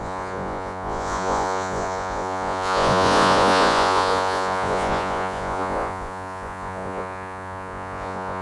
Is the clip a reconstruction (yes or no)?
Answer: yes